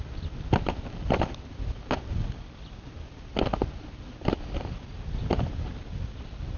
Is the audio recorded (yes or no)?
yes